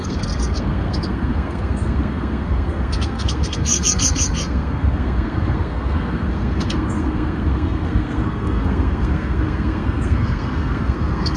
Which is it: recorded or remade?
remade